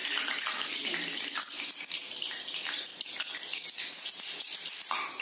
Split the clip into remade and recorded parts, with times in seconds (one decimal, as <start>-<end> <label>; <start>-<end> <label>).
0.0-2.9 remade; 2.9-3.9 recorded; 3.9-5.2 remade